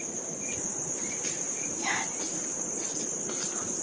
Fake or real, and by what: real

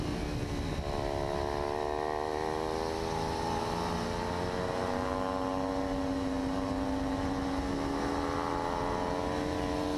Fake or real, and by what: real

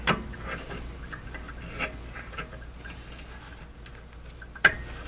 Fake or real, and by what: real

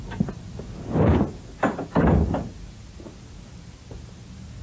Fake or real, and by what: real